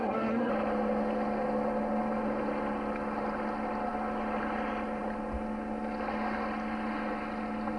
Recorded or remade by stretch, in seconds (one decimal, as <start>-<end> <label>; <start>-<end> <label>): 0.0-0.5 remade; 0.5-7.8 recorded